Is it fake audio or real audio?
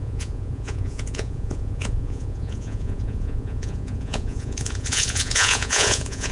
fake